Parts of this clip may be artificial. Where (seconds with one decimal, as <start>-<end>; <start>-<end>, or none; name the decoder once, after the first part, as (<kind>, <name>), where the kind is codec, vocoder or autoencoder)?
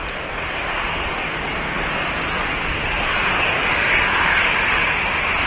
none